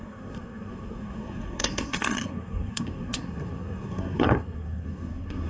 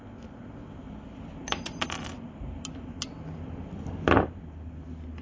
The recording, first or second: second